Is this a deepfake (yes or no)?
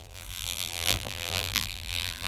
yes